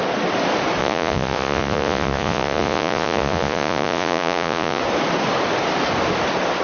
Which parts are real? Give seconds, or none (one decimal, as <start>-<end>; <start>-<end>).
0.0-0.8; 4.8-6.6